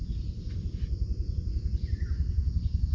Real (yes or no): yes